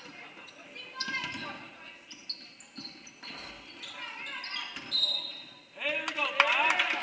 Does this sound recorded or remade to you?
recorded